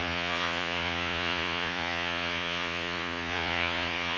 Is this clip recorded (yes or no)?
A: no